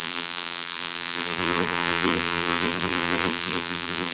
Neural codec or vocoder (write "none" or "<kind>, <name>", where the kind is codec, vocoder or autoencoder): vocoder, BigVGAN v2